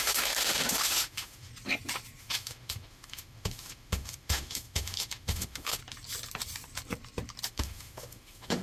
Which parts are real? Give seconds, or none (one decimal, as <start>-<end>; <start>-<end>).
1.5-2.2; 5.8-7.5